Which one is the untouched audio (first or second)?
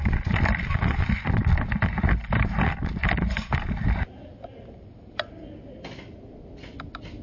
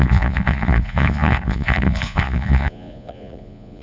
first